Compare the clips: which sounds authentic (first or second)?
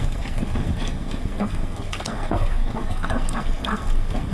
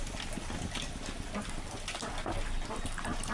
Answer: second